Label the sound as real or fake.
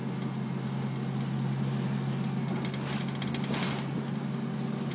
real